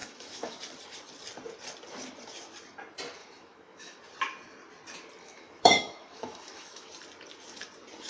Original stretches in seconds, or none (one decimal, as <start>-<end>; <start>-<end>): 0.6-3.2; 4.0-5.2; 6.9-8.1